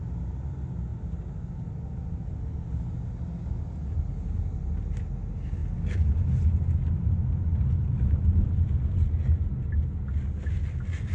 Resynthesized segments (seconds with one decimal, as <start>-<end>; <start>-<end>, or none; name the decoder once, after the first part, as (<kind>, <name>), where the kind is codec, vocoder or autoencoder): none